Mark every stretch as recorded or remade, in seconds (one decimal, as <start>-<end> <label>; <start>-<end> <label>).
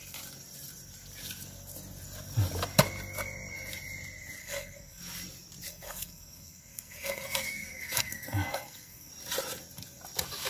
0.0-4.4 recorded; 4.4-5.0 remade; 5.0-5.7 recorded; 5.7-9.1 remade; 9.1-10.5 recorded